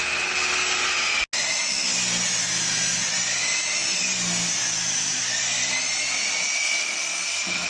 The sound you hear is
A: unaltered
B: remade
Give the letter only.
A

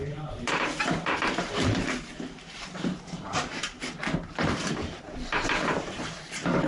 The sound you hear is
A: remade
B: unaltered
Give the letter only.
A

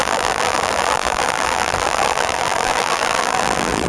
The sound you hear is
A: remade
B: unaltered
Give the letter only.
A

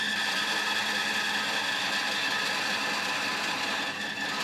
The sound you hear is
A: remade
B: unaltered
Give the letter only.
B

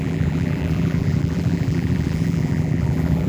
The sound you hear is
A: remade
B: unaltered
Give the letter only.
A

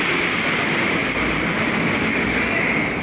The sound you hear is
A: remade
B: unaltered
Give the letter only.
B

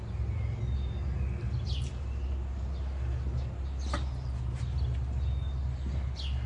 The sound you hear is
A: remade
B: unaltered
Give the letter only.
B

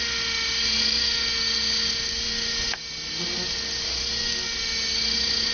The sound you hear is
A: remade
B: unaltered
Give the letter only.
B